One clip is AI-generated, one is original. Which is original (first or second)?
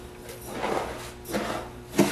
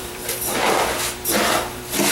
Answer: first